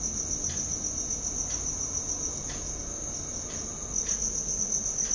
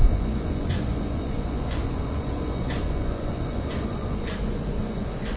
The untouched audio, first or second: first